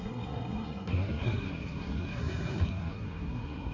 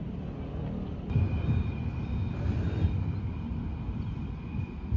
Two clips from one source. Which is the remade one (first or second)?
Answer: first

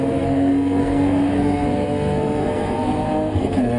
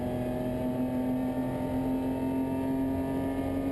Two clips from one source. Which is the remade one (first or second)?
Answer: first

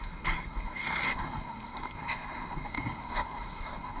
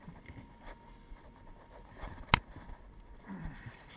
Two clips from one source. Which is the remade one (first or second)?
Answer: first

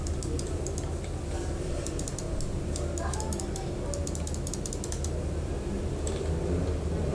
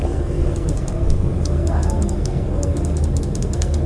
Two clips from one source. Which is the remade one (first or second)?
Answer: second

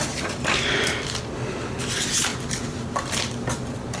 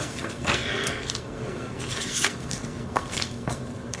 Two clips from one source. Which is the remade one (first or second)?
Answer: second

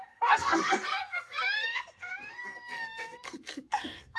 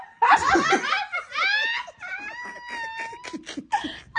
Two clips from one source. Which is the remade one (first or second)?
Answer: first